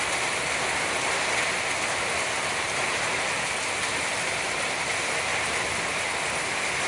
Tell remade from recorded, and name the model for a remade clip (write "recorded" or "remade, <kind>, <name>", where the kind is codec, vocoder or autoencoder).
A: recorded